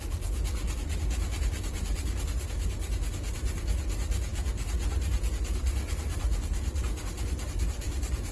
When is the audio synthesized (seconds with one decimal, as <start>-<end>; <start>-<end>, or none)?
none